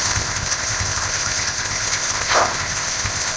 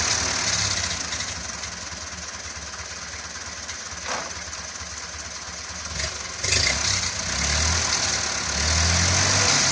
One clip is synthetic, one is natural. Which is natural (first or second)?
second